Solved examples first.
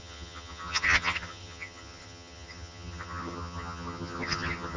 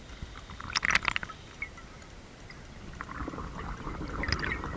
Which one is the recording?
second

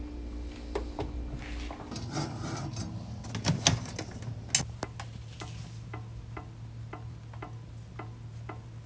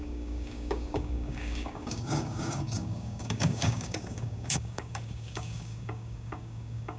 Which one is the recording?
first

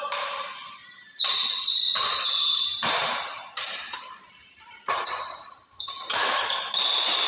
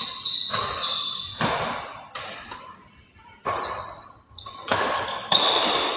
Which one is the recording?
second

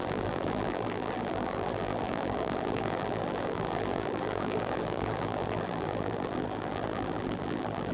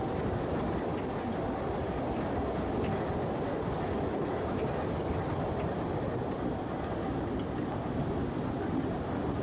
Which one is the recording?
second